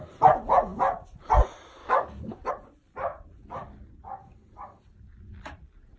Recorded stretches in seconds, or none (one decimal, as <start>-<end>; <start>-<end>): 0.0-1.8; 2.5-6.0